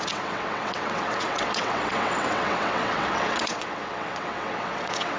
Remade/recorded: remade